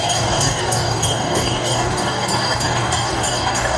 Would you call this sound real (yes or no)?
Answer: no